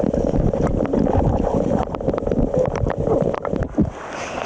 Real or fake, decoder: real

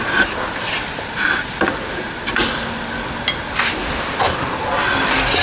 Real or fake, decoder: real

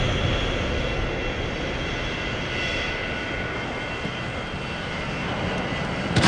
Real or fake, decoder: real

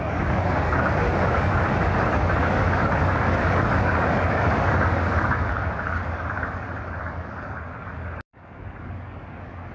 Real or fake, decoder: fake, codec, DAC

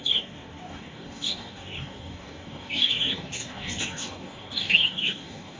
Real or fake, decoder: fake, codec, DAC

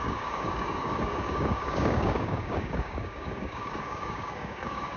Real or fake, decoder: fake, codec, DAC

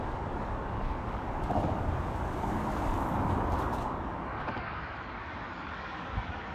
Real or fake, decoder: fake, codec, DAC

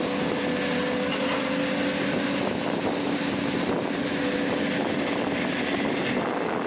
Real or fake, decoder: real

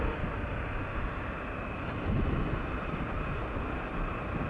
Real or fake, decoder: real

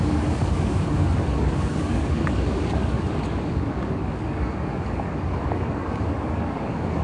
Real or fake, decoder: fake, codec, DAC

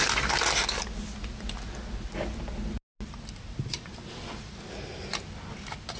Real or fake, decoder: real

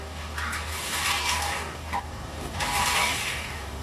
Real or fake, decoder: fake, codec, DAC